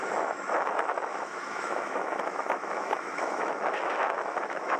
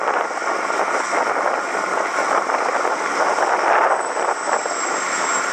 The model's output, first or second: first